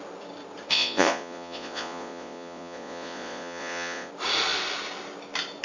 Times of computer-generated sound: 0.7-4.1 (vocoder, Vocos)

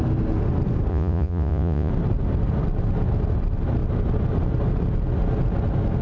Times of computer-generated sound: 0.9-1.9 (vocoder, Vocos)

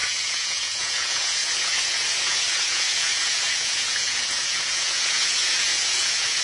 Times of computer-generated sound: 0.0-6.4 (vocoder, Vocos)

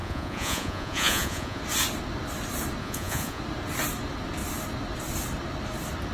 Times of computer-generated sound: 0.0-1.6 (vocoder, Vocos); 2.8-3.4

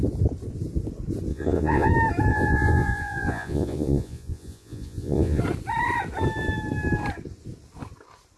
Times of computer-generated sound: 1.3-1.9 (vocoder, Vocos); 2.3-5.4

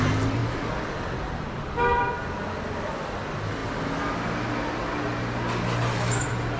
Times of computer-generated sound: none